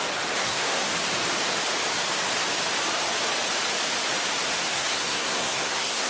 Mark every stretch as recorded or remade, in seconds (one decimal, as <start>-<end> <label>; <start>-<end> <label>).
0.0-0.4 recorded; 0.4-0.9 remade; 0.9-4.7 recorded; 4.7-6.1 remade